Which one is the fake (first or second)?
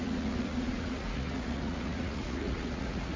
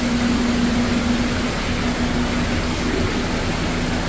first